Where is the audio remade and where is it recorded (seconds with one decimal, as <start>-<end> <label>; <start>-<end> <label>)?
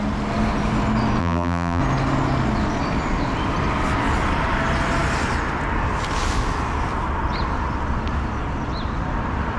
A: 0.0-1.2 recorded; 1.2-1.8 remade; 1.8-9.6 recorded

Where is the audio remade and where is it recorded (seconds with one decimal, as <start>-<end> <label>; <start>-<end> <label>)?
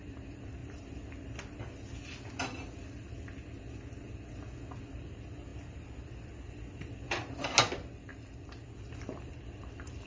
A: 0.0-10.1 recorded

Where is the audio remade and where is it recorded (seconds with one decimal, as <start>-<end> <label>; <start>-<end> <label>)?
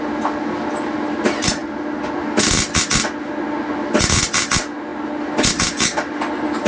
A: 0.0-6.7 recorded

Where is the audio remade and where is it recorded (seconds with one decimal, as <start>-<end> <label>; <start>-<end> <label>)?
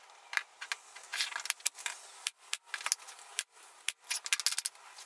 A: 0.0-5.1 recorded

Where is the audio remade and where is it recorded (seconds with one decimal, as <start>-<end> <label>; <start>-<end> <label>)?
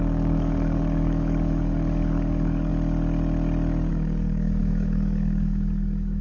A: 0.0-2.7 remade; 2.7-3.9 recorded; 3.9-6.2 remade